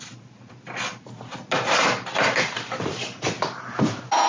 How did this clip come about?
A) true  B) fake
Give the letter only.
A